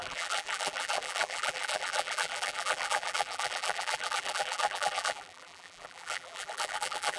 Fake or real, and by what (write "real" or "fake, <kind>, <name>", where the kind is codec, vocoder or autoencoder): fake, vocoder, BigVGAN v2